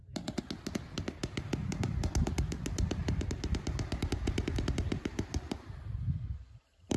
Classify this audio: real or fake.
real